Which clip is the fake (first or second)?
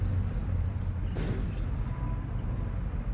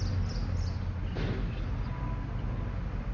first